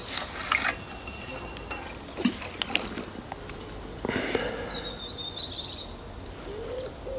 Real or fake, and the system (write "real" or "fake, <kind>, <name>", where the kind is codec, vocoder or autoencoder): real